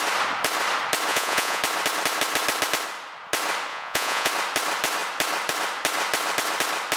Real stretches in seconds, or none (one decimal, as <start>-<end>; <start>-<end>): 0.0-1.1; 1.6-3.7; 4.3-7.0